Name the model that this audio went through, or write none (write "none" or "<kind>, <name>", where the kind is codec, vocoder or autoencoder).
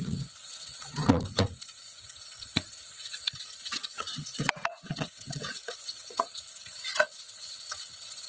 vocoder, WaveNeXt